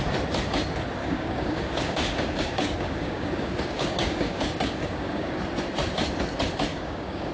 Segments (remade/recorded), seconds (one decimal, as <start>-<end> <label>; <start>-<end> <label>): 0.0-1.0 recorded; 1.0-5.4 remade; 5.4-6.7 recorded; 6.7-7.3 remade